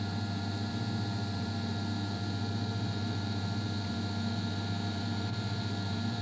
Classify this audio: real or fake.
fake